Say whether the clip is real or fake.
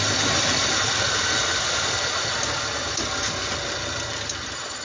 real